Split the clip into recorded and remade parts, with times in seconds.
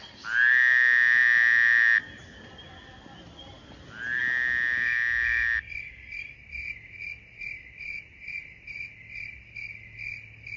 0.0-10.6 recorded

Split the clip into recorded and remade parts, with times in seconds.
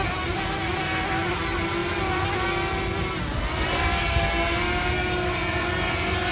0.0-6.3 recorded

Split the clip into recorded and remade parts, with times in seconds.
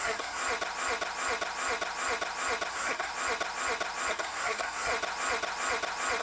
0.0-0.4 remade; 0.4-2.7 recorded; 2.7-3.1 remade; 3.1-4.1 recorded; 4.1-4.9 remade; 4.9-6.2 recorded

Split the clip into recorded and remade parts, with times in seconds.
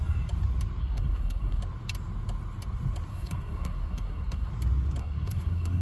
0.0-0.8 recorded; 0.8-1.6 remade; 1.6-3.1 recorded; 3.1-4.5 remade; 4.5-5.0 recorded; 5.0-5.8 remade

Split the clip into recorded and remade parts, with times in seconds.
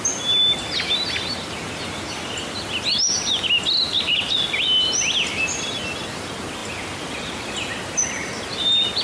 0.0-9.0 recorded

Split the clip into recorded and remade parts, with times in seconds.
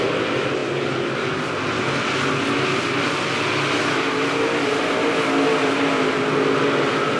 0.0-7.2 recorded